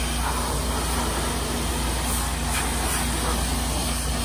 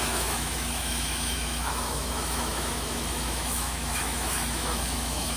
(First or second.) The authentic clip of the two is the first